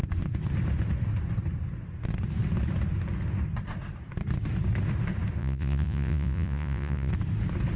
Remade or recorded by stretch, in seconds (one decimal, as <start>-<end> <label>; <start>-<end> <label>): 0.0-5.4 recorded; 5.4-7.1 remade; 7.1-7.8 recorded